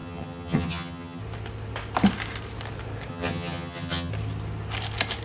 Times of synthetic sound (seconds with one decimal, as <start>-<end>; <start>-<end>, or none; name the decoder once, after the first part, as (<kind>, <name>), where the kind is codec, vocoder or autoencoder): 0.0-1.2 (vocoder, HiFi-GAN); 3.1-4.1

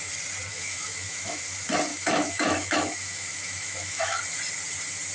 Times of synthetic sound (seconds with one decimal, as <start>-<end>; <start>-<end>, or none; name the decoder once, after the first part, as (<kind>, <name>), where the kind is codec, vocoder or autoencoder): 0.5-1.4 (autoencoder, DAC-VAE); 1.9-4.2

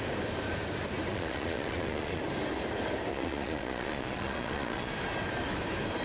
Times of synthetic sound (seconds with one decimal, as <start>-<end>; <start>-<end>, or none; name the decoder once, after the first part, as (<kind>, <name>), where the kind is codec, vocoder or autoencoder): 1.1-2.2 (vocoder, Vocos); 3.1-4.9